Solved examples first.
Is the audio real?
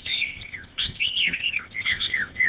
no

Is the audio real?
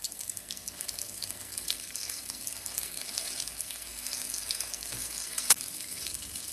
no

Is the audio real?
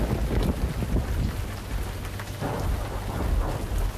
yes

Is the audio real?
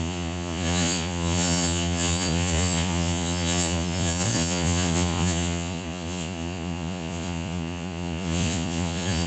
no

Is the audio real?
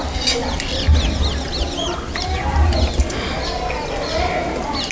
yes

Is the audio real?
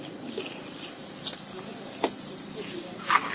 yes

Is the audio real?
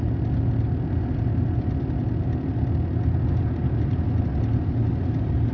yes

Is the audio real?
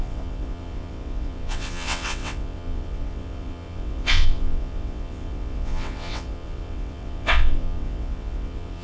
no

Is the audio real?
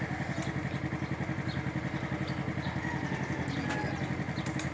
yes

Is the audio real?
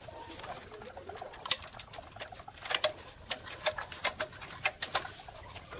yes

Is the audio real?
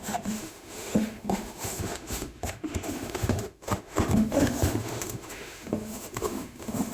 no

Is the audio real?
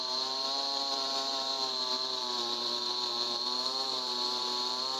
no